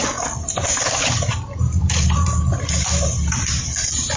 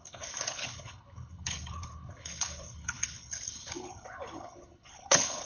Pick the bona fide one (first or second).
first